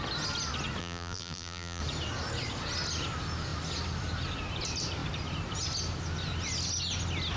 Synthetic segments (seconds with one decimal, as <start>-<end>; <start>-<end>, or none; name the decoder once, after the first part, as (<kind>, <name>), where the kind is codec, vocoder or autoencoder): 0.8-1.8 (vocoder, BigVGAN v2)